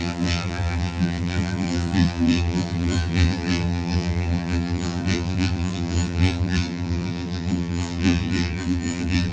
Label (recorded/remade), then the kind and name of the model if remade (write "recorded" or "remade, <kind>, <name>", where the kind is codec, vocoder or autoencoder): remade, vocoder, BigVGAN v2